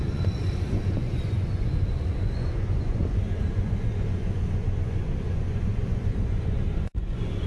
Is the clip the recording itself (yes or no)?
no